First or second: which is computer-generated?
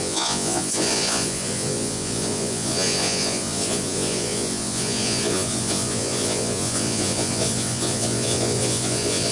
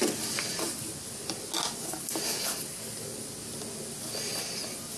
first